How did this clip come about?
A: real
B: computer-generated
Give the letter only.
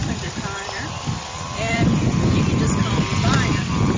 B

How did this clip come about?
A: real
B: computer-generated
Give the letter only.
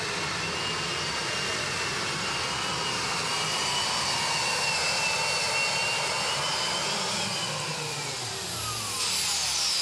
A